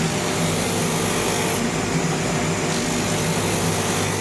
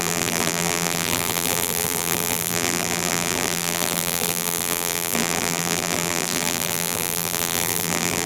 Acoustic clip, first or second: first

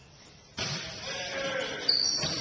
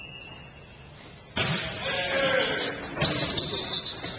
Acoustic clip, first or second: second